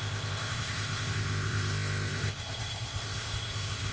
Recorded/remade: remade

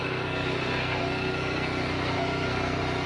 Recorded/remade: remade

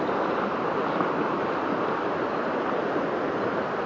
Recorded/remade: recorded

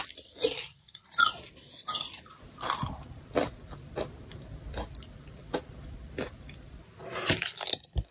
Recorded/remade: remade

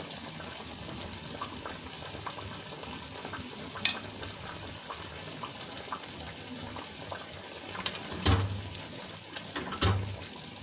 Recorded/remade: recorded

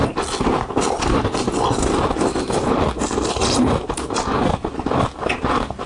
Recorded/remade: recorded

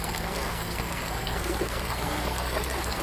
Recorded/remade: remade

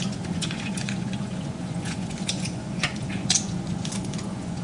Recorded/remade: remade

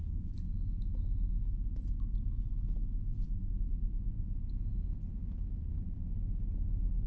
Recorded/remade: recorded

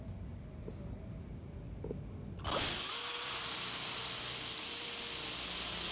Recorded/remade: recorded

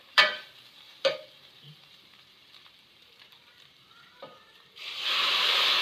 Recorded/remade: remade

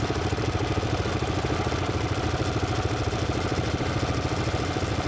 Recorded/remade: recorded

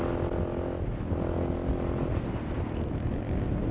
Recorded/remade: recorded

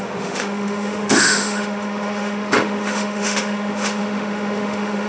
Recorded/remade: remade